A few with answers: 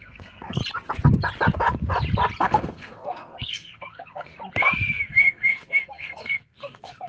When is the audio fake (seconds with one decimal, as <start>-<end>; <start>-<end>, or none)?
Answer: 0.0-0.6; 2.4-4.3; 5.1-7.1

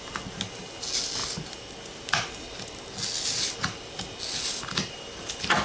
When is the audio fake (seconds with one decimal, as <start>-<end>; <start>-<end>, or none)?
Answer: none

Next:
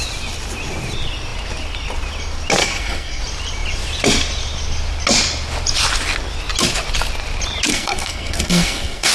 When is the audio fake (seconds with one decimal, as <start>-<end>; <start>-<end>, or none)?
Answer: 2.6-3.2; 7.7-9.1

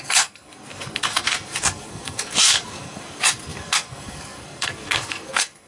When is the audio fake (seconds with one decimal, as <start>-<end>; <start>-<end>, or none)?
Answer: 0.0-5.7

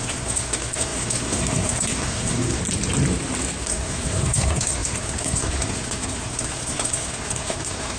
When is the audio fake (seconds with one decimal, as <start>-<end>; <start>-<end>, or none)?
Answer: 0.0-2.6; 3.6-8.0

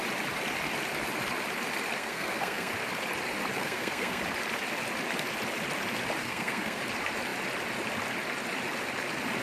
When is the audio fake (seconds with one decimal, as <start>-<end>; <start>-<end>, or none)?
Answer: 2.0-2.7; 3.6-4.2; 6.2-6.8

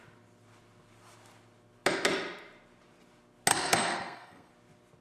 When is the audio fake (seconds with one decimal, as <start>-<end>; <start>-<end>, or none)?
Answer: 3.5-4.5

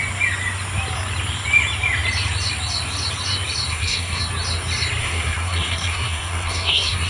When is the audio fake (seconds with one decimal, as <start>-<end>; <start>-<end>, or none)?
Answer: 3.7-4.2; 5.0-7.1